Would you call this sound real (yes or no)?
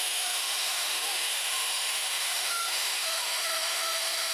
no